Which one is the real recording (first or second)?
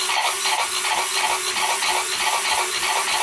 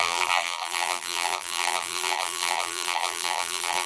first